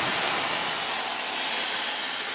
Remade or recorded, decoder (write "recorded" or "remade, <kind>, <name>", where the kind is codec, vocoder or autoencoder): recorded